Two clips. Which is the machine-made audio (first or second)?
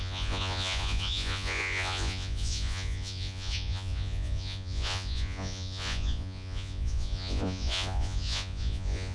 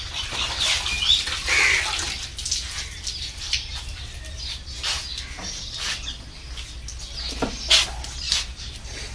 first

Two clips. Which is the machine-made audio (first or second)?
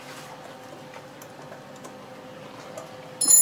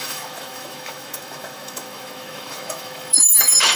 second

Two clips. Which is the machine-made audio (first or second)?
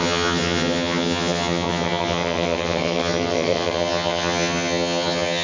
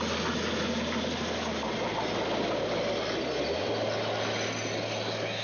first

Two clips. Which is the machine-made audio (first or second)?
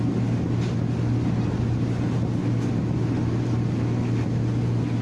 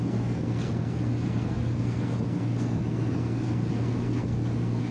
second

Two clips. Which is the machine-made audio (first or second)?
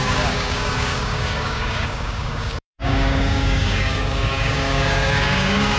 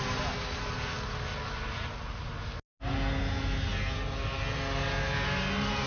first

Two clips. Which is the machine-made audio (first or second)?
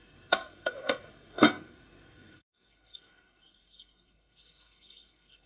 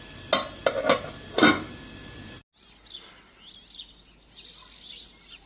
first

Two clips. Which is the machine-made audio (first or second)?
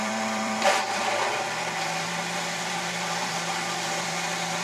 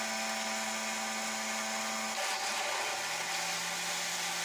first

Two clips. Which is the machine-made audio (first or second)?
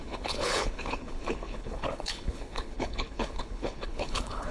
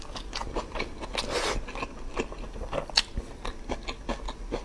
first